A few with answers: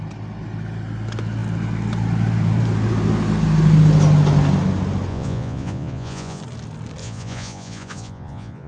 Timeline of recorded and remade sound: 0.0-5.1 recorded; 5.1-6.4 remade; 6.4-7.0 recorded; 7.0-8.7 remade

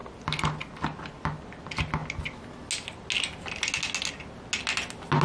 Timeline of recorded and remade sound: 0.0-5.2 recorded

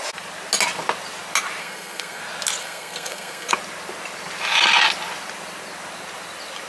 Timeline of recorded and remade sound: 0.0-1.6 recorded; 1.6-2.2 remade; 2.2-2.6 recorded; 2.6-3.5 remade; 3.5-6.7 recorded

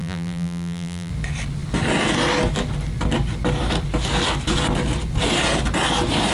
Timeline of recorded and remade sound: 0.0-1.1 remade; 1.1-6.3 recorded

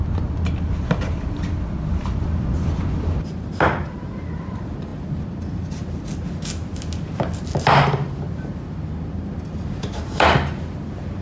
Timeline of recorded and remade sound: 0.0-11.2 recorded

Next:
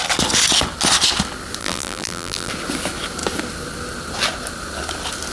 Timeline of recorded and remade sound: 0.0-1.6 recorded; 1.6-2.5 remade; 2.5-5.3 recorded

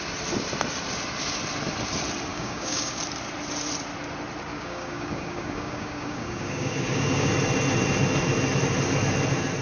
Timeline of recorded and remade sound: 0.0-2.3 recorded; 2.3-3.0 remade; 3.0-4.5 recorded; 4.5-7.3 remade; 7.3-9.6 recorded

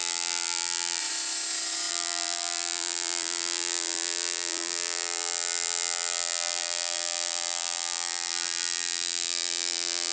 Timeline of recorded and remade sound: 0.0-1.0 remade; 1.0-1.9 recorded; 1.9-10.1 remade